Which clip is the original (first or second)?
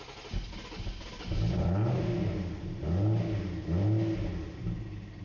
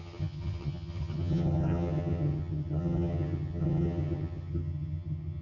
first